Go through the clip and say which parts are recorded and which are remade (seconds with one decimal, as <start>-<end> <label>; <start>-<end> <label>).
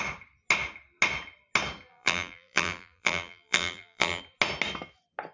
0.0-1.9 recorded; 1.9-4.2 remade; 4.2-5.3 recorded